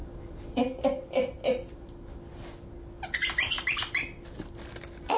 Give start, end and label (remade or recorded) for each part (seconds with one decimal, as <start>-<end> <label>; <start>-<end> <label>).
0.0-5.2 recorded